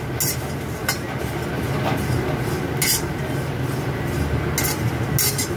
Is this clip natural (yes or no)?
yes